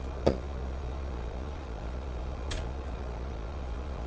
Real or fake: fake